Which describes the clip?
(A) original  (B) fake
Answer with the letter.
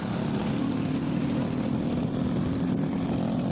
A